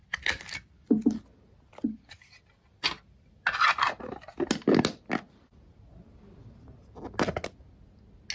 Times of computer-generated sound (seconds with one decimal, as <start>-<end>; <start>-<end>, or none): none